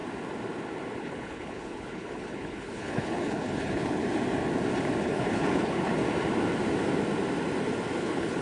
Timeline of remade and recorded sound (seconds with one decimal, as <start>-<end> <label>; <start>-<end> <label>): 0.0-1.0 recorded; 1.0-4.0 remade; 4.0-5.0 recorded; 5.0-6.0 remade; 6.0-8.0 recorded; 8.0-8.4 remade